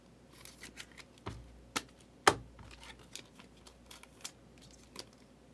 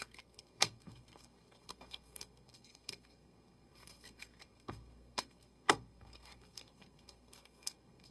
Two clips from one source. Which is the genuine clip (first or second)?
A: first